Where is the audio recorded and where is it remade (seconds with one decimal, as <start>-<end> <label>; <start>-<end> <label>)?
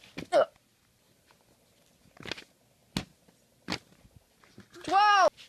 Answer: 0.0-5.5 recorded